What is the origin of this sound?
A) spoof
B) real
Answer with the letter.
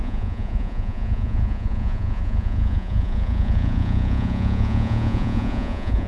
A